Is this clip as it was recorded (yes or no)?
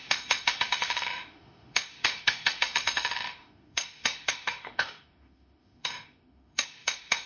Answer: no